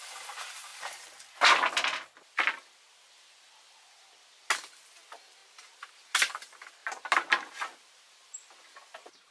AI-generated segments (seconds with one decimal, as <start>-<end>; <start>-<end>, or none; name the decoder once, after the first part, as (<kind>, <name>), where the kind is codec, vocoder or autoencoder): none